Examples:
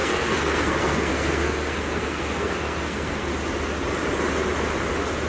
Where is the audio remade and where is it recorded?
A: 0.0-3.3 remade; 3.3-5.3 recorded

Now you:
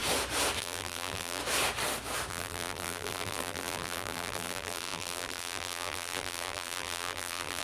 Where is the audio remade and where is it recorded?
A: 0.0-0.6 recorded; 0.6-1.4 remade; 1.4-2.3 recorded; 2.3-7.6 remade

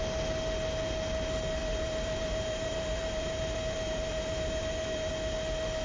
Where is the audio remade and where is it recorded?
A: 0.0-1.6 recorded; 1.6-5.1 remade; 5.1-5.8 recorded

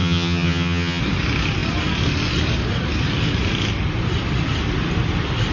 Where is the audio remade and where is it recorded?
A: 0.0-1.0 remade; 1.0-5.5 recorded

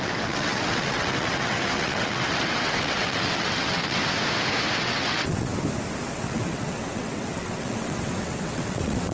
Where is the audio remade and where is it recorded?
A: 0.0-4.0 remade; 4.0-4.7 recorded; 4.7-5.5 remade; 5.5-6.1 recorded; 6.1-9.1 remade

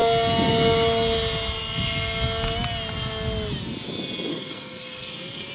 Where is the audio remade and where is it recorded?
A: 0.0-4.3 recorded; 4.3-5.5 remade